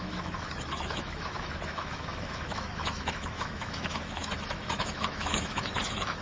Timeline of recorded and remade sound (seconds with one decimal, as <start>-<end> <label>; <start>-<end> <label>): 0.0-6.2 remade